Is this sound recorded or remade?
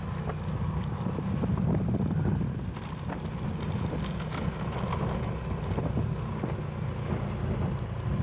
recorded